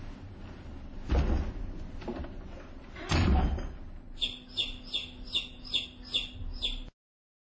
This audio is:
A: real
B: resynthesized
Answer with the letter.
A